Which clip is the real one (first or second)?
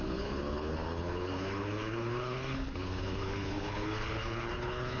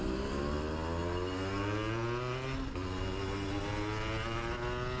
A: second